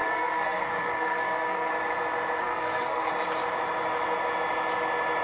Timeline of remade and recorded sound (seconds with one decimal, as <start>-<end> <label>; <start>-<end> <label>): 0.0-1.7 remade; 1.7-2.4 recorded; 2.4-3.1 remade; 3.1-5.2 recorded